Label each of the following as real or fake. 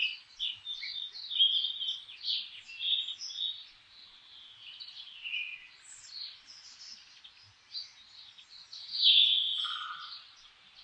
real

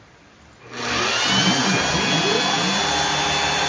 real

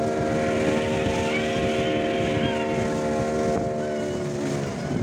real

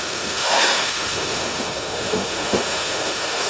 fake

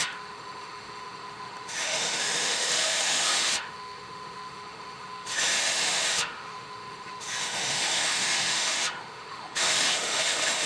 fake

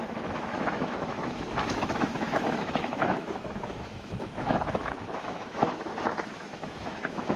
fake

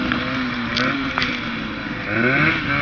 real